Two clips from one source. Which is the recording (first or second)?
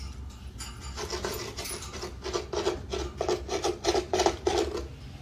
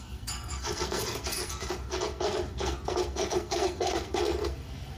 first